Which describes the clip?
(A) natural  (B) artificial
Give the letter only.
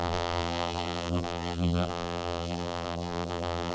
B